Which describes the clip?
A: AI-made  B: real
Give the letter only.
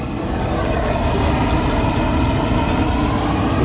B